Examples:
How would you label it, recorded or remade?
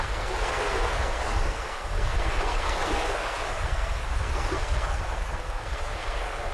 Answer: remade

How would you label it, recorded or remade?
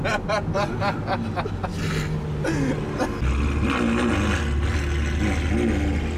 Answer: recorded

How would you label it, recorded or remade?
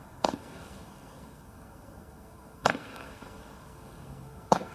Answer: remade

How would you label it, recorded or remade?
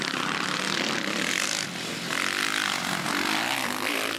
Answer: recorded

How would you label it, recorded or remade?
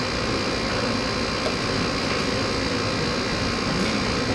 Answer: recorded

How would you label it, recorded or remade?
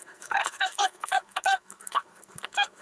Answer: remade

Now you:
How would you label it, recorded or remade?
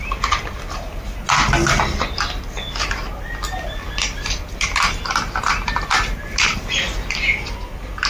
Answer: recorded